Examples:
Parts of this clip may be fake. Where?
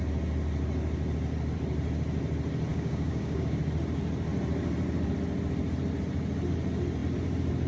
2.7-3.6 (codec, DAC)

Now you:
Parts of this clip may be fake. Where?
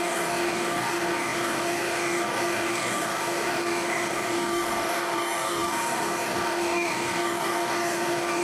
0.0-8.4 (codec, DAC)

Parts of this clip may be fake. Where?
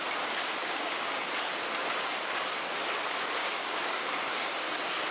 0.6-1.2 (codec, DAC); 3.4-4.3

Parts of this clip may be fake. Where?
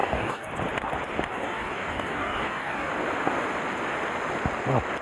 0.0-0.5 (codec, DAC); 1.3-2.9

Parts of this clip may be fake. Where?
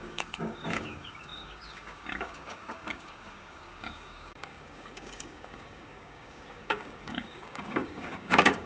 0.0-8.7 (codec, DAC)